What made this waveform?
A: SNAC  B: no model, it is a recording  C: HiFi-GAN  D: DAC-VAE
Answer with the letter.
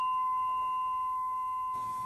D